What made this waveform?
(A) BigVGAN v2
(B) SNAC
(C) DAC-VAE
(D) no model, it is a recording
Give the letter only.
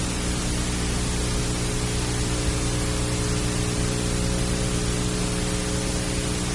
D